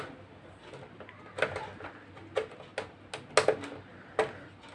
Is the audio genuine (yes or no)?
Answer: yes